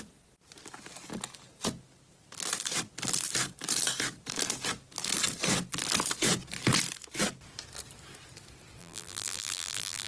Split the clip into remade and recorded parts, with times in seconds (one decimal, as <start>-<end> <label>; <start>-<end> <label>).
0.0-8.8 recorded; 8.8-10.1 remade